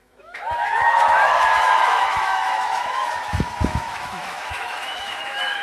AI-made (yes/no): yes